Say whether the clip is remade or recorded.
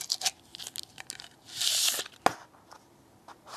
recorded